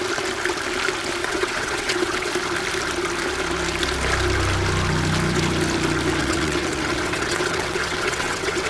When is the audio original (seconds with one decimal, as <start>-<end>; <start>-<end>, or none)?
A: 0.0-1.2; 2.3-6.2